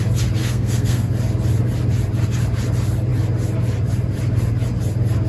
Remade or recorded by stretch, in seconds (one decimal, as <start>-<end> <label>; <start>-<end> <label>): 0.0-0.4 recorded; 0.4-1.1 remade; 1.1-5.3 recorded